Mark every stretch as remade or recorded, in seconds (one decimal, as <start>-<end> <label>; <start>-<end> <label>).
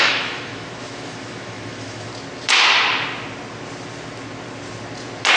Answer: 0.0-2.1 remade; 2.1-5.4 recorded